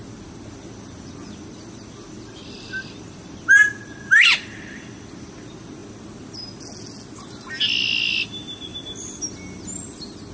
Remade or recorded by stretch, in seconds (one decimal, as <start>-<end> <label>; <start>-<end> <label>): 0.0-10.3 recorded